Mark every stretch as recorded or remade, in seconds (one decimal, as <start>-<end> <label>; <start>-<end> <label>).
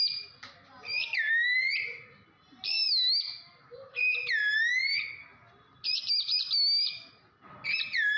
0.0-8.2 recorded